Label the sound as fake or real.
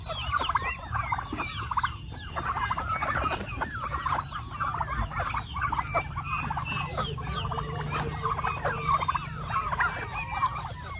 real